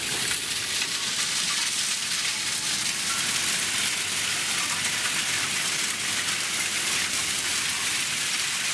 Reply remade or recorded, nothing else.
recorded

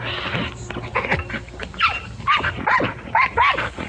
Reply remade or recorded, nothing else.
recorded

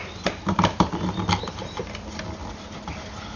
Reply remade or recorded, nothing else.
recorded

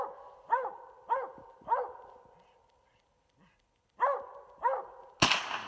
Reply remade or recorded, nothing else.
recorded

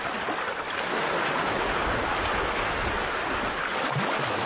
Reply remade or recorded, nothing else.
recorded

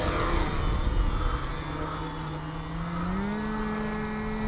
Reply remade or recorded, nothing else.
recorded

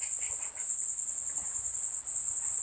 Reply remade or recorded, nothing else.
recorded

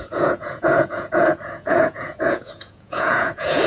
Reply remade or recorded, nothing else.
remade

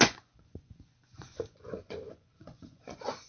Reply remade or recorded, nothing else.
remade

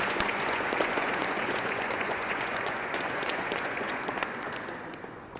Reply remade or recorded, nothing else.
remade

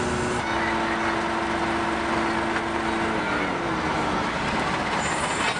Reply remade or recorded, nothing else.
recorded